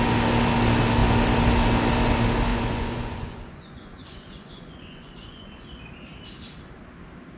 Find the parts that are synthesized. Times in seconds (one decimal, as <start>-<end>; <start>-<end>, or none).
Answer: 2.5-5.8